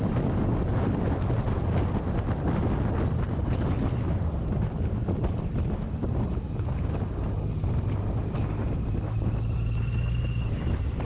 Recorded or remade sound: recorded